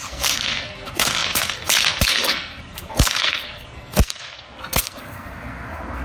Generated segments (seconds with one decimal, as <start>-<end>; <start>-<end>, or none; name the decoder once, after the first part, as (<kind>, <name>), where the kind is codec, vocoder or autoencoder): 0.0-6.0 (codec, SNAC)

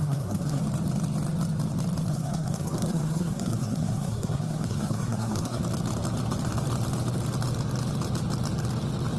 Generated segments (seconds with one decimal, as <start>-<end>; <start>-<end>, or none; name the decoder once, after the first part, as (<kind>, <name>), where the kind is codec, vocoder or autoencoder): 0.0-0.6 (codec, SNAC); 2.1-5.6

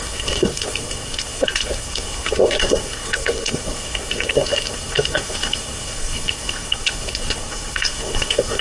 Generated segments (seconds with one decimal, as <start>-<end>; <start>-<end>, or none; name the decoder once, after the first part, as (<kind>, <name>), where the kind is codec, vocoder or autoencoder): 0.0-8.6 (codec, SNAC)

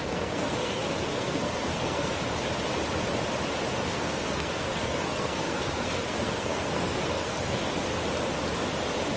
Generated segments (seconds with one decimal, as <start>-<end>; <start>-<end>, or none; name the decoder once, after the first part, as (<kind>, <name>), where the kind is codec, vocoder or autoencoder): 0.0-2.2 (codec, SNAC); 3.9-7.7

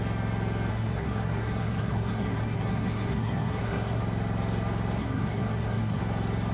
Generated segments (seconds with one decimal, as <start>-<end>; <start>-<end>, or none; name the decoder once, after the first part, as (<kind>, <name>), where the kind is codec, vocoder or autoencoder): 0.7-4.0 (codec, SNAC); 5.0-6.0

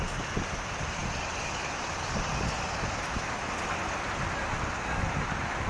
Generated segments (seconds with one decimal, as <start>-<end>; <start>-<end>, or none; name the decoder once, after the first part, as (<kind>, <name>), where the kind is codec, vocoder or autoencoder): none